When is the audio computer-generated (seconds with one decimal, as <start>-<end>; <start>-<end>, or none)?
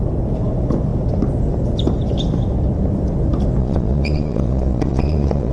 3.6-5.5